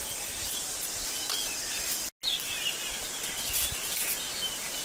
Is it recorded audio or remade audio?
recorded